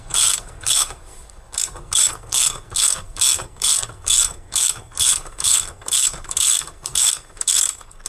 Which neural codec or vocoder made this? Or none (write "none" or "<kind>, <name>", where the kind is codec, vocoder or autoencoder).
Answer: codec, SNAC